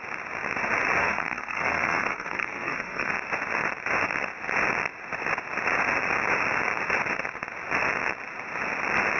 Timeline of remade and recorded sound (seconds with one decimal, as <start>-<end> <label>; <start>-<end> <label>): 0.0-1.0 recorded; 1.0-3.1 remade; 3.1-9.2 recorded